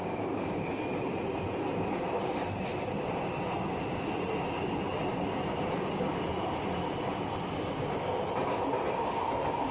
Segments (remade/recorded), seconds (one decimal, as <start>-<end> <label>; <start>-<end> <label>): 0.0-0.8 remade; 0.8-9.7 recorded